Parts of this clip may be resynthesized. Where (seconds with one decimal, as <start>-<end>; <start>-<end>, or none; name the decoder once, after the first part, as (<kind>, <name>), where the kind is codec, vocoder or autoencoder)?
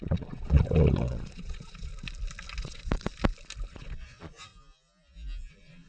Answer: 0.0-1.9 (vocoder, Vocos); 2.6-3.1; 3.7-4.5; 5.5-5.9